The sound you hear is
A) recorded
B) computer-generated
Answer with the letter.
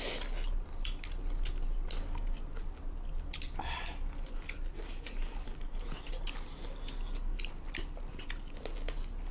A